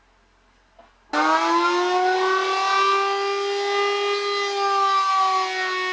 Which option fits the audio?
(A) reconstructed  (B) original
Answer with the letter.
B